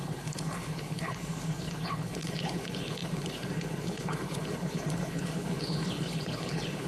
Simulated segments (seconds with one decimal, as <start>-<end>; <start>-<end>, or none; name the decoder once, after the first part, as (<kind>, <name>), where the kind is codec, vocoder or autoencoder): 0.0-6.9 (codec, HILCodec)